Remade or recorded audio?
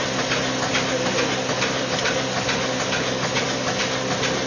recorded